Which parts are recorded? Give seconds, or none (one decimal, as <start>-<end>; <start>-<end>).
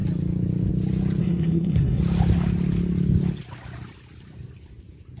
0.0-1.2; 2.0-5.2